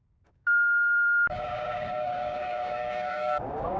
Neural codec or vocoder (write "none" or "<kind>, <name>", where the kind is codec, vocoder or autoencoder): codec, DAC